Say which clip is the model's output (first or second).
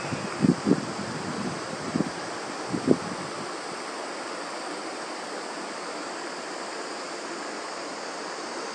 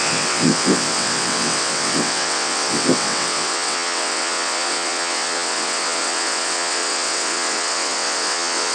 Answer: second